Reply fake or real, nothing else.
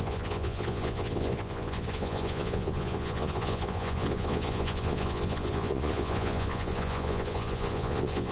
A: fake